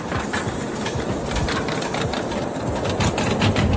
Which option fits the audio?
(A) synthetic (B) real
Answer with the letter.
B